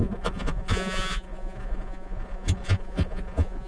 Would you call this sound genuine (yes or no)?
no